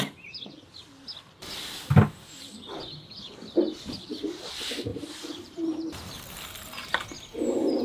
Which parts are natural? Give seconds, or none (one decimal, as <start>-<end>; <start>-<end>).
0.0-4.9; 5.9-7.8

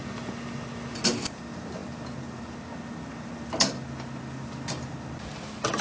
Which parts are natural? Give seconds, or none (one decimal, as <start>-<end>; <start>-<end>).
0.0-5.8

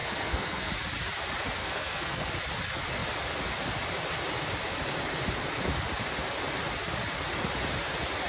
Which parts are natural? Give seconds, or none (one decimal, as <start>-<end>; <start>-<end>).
0.7-1.6; 2.3-8.3

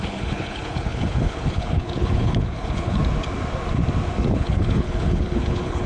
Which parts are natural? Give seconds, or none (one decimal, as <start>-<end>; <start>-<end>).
3.0-4.3

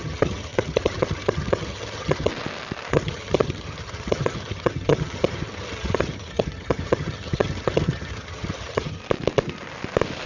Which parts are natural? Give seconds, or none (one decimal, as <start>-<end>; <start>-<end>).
2.3-2.9; 9.0-10.3